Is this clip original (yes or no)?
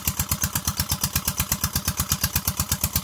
no